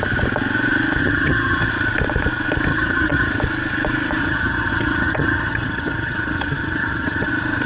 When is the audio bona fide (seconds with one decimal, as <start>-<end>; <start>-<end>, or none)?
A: 0.0-1.0; 1.7-2.7; 3.3-4.2; 7.3-7.7